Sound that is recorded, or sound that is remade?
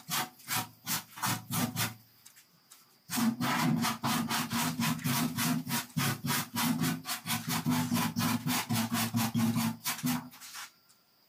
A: recorded